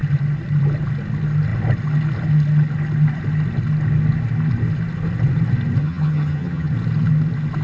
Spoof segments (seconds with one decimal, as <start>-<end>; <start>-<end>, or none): 5.8-6.7